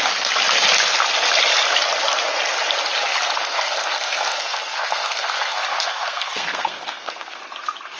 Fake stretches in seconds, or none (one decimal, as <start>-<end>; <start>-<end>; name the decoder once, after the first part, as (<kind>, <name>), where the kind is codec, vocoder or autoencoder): 3.4-7.4 (codec, SNAC)